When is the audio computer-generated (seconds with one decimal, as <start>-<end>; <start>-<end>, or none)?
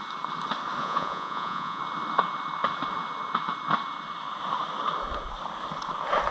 0.8-1.8